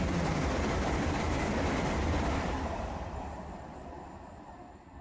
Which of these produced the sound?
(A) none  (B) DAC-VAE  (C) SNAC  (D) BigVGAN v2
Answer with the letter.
A